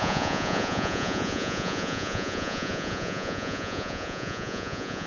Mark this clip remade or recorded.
remade